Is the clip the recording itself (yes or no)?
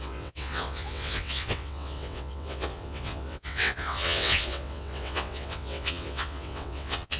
no